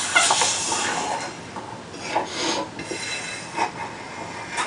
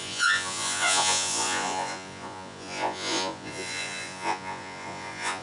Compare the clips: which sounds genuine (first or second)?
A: first